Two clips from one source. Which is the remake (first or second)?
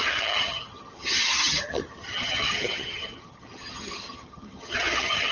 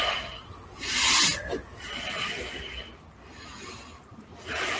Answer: first